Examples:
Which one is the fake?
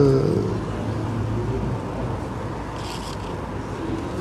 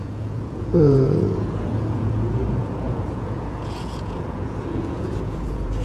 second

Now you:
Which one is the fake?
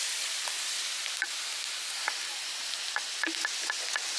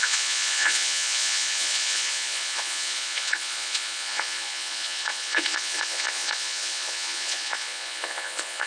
second